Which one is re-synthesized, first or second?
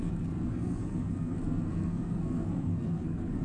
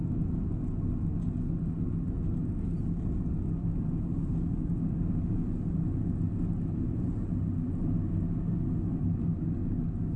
first